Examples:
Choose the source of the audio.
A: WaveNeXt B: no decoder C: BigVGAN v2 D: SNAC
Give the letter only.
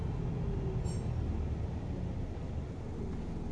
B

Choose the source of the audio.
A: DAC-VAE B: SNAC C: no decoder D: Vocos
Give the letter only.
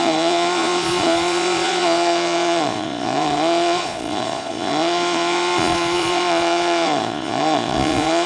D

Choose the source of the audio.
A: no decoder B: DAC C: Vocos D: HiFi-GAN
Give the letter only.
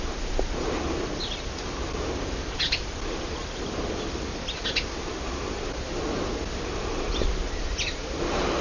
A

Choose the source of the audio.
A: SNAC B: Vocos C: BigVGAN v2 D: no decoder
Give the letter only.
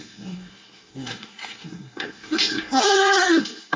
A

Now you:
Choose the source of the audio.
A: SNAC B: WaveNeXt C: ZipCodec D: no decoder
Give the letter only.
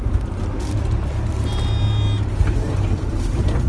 D